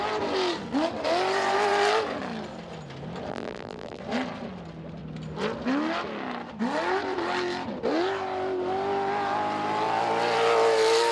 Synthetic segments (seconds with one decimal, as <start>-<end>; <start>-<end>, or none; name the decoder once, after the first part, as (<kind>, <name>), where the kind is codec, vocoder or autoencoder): 3.3-4.0 (vocoder, BigVGAN v2)